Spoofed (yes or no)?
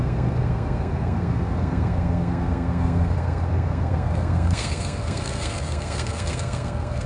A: yes